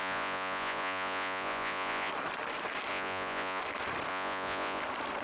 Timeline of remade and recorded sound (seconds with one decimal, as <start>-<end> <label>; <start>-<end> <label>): 0.0-2.1 remade; 2.1-2.9 recorded; 2.9-3.6 remade; 3.6-4.1 recorded; 4.1-4.8 remade; 4.8-5.2 recorded